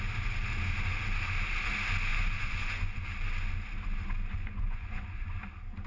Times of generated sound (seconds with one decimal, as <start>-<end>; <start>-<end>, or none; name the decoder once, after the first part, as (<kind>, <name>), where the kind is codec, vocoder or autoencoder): 2.1-3.1 (vocoder, Vocos); 4.3-5.3